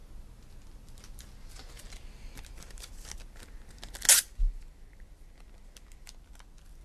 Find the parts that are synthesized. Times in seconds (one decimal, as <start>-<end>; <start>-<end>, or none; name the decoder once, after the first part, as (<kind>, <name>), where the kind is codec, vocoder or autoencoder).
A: none